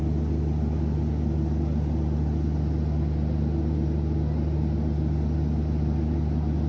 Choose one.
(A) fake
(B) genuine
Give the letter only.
B